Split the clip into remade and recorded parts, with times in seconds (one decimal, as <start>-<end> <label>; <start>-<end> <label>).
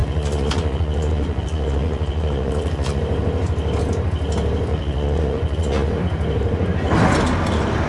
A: 0.0-3.0 remade; 3.0-4.7 recorded; 4.7-6.0 remade; 6.0-7.9 recorded